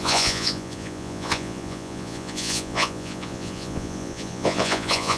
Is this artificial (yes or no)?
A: yes